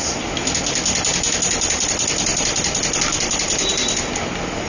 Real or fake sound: real